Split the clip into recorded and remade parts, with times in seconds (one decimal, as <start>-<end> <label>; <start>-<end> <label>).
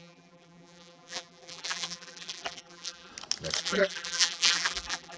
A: 0.0-3.1 remade; 3.1-3.6 recorded; 3.6-5.2 remade